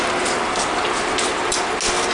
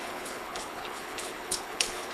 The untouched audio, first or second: first